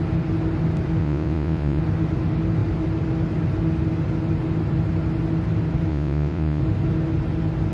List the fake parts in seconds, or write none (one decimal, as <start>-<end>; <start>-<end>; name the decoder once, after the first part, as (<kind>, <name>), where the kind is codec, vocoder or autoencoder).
1.0-1.8 (vocoder, Vocos); 5.9-6.6